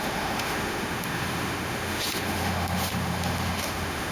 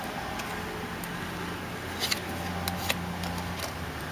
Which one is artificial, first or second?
first